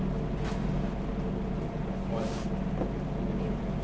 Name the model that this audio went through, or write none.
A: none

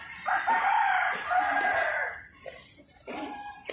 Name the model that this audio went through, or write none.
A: none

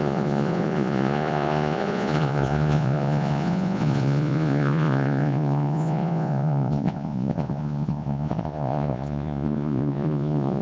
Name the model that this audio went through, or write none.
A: vocoder, Vocos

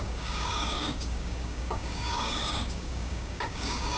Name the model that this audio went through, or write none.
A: codec, DAC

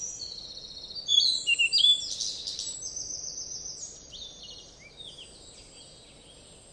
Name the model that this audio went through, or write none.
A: none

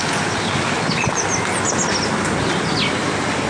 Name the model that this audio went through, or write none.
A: none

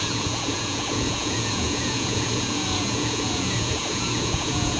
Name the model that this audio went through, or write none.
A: vocoder, Vocos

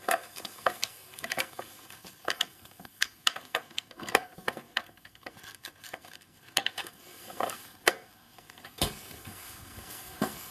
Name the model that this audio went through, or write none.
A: codec, SNAC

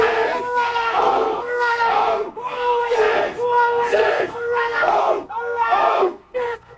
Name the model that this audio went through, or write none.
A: codec, SNAC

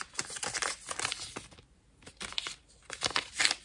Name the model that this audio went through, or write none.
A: none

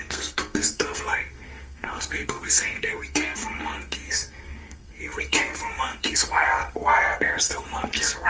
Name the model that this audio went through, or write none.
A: codec, SNAC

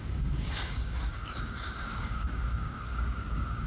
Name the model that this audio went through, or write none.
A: codec, DAC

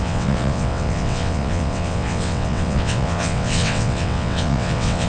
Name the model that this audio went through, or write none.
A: vocoder, WaveNeXt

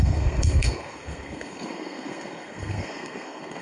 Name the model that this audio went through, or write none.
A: codec, SNAC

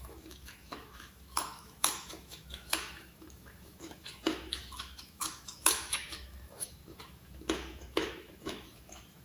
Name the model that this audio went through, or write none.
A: autoencoder, DAC-VAE